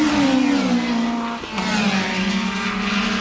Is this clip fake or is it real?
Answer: real